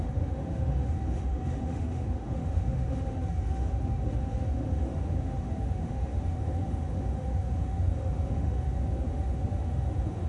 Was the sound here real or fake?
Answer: fake